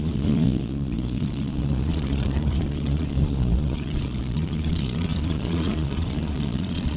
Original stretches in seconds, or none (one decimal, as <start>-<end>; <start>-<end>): none